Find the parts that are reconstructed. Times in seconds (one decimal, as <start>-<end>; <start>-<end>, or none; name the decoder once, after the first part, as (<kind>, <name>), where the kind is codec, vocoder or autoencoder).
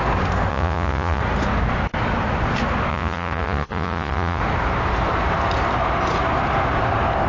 0.5-1.2 (vocoder, Vocos); 2.9-4.4